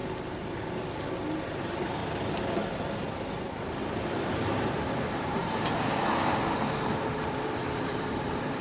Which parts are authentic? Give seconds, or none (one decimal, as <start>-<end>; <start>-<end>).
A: 0.0-1.6; 2.0-6.8